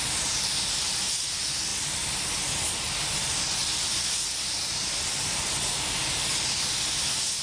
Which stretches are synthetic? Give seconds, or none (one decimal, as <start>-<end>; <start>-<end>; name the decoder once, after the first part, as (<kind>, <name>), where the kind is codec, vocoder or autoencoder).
none